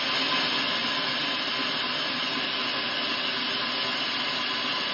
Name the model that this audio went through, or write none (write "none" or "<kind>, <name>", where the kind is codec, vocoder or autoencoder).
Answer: none